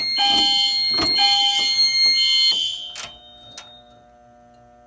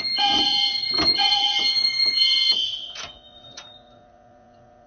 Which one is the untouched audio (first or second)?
first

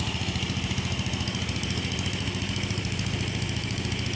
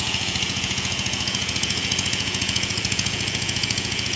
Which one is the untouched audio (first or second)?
first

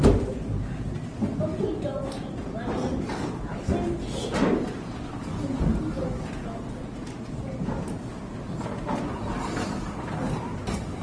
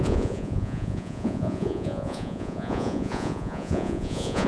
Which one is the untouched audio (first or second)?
first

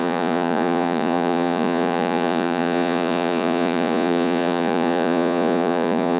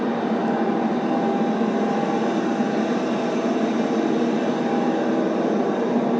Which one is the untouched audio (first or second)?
second